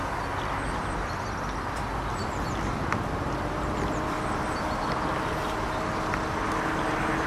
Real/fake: real